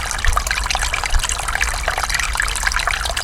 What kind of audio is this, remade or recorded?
recorded